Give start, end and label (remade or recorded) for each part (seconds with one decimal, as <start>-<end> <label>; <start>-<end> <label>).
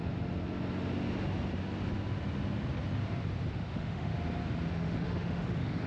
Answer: 0.0-3.5 recorded; 3.5-4.1 remade; 4.1-4.7 recorded; 4.7-5.9 remade